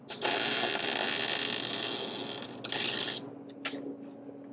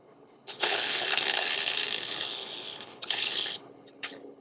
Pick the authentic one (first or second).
first